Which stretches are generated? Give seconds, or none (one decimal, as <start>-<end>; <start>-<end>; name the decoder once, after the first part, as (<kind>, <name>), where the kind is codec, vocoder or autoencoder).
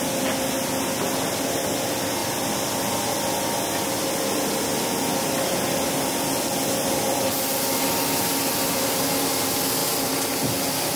2.2-2.9 (vocoder, BigVGAN v2); 9.8-10.5